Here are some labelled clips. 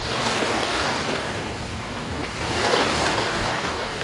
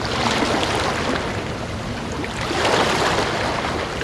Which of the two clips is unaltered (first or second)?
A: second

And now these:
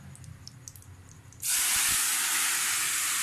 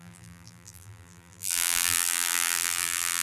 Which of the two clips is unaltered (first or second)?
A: first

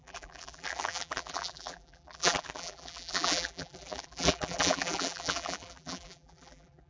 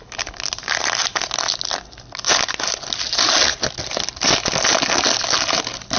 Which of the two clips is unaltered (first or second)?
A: second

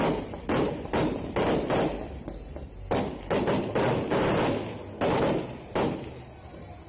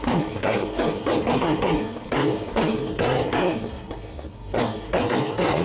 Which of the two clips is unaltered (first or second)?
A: first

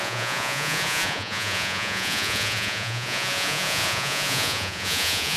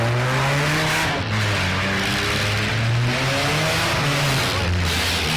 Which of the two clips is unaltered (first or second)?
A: second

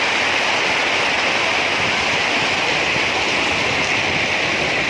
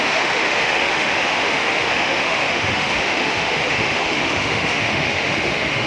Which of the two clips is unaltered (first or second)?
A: first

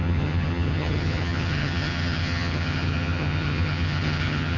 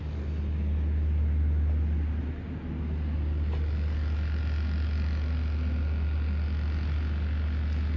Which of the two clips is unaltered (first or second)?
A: second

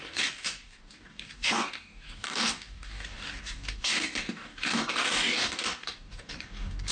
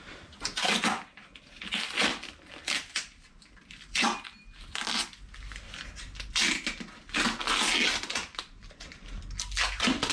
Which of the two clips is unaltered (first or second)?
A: second